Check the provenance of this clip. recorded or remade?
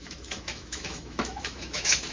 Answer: remade